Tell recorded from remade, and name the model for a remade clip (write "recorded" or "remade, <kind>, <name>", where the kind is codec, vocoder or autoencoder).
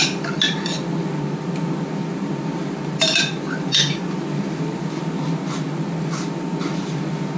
recorded